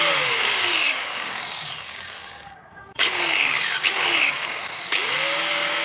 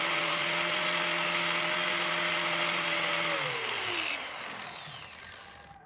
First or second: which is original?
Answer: second